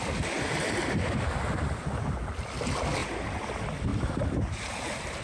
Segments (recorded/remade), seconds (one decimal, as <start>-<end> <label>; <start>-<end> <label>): 0.0-3.0 recorded; 3.0-3.5 remade; 3.5-5.2 recorded